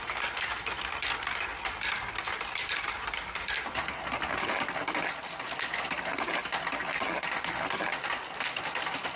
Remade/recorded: recorded